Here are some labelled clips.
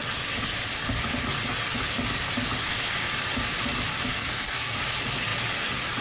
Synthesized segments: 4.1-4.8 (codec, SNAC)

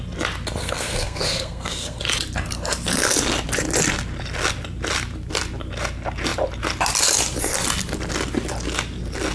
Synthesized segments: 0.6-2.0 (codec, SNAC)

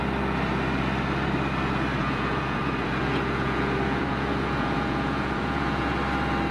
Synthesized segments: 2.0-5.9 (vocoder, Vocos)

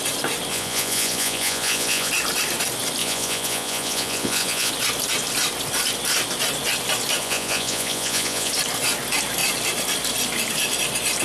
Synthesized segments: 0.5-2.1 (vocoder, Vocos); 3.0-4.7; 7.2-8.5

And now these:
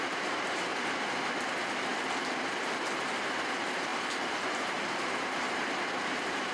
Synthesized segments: none

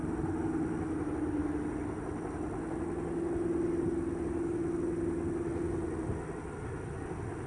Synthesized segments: none

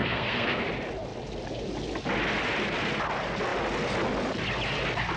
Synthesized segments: 0.0-0.6 (codec, SNAC)

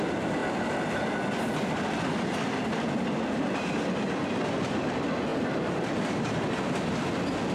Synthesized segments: 5.3-5.9 (vocoder, BigVGAN v2)